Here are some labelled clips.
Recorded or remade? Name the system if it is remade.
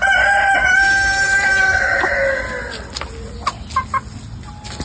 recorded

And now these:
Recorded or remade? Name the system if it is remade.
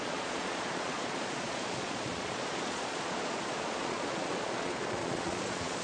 remade, vocoder, Vocos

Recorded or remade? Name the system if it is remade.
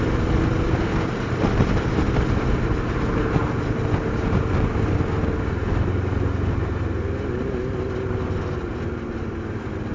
recorded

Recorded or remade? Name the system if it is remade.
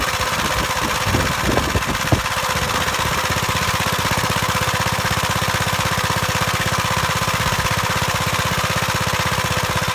recorded